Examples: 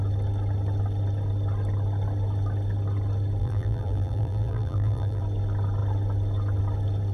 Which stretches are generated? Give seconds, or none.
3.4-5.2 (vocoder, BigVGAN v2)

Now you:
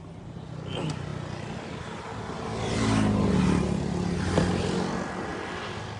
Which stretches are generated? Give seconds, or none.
5.3-6.0 (vocoder, BigVGAN v2)

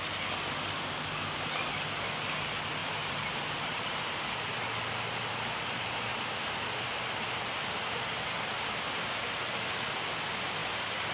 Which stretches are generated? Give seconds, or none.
2.8-4.3 (vocoder, BigVGAN v2)

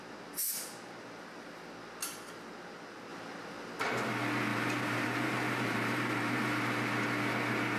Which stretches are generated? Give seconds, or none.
4.5-6.6 (vocoder, BigVGAN v2)

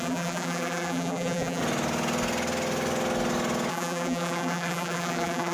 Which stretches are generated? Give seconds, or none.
0.0-1.6 (vocoder, BigVGAN v2); 3.7-5.5

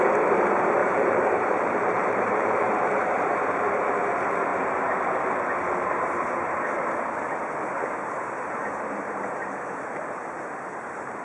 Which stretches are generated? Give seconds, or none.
0.8-3.9 (vocoder, BigVGAN v2)